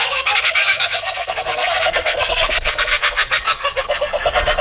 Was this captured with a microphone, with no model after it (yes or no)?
no